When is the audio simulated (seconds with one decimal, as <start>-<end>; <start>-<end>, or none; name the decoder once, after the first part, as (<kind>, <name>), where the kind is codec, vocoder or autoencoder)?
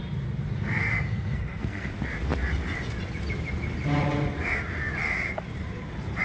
0.7-1.9 (codec, SNAC)